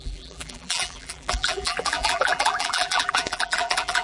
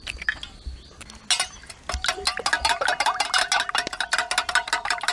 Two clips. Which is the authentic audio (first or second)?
second